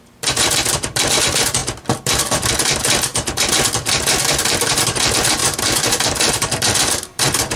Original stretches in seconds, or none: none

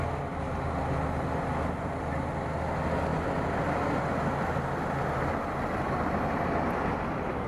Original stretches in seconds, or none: 0.0-7.5